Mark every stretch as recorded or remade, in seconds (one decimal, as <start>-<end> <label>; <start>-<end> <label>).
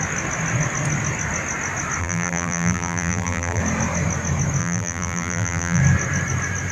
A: 0.0-2.0 recorded; 2.0-3.6 remade; 3.6-4.6 recorded; 4.6-5.8 remade; 5.8-6.7 recorded